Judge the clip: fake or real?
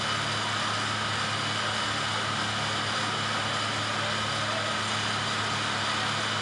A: real